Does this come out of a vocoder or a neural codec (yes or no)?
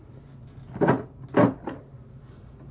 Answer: no